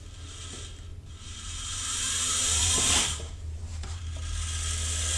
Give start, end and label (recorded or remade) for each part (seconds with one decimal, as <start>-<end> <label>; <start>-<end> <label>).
0.0-0.9 recorded; 0.9-4.0 remade; 4.0-5.2 recorded